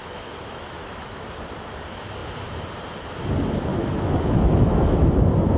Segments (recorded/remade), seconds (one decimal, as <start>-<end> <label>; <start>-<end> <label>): 0.0-1.2 remade; 1.2-3.7 recorded; 3.7-5.1 remade; 5.1-5.6 recorded